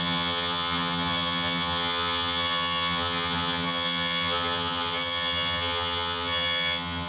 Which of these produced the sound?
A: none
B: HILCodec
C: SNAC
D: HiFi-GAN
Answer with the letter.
D